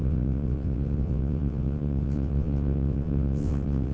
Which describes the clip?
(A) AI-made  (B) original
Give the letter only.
A